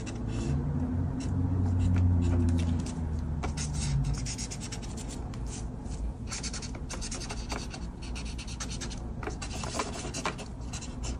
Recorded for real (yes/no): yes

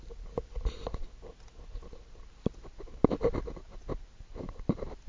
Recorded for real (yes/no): yes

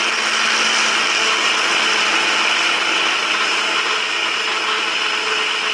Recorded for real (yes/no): yes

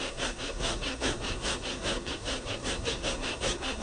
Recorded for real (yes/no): no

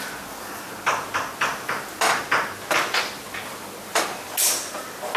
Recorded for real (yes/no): yes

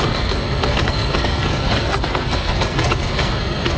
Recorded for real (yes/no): no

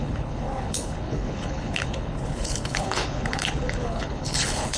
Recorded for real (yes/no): no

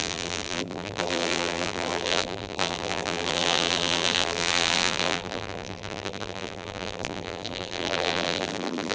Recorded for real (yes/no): no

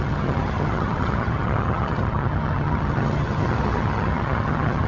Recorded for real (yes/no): no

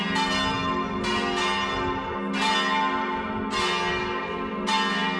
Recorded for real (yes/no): yes